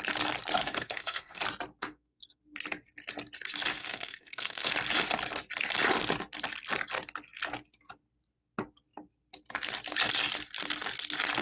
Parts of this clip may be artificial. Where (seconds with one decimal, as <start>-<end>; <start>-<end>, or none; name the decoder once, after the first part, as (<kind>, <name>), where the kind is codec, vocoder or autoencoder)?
0.6-1.4 (codec, SNAC); 1.8-2.4; 3.8-4.7